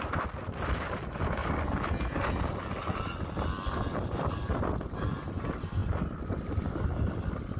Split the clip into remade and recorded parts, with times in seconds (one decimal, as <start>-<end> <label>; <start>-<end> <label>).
0.0-7.6 recorded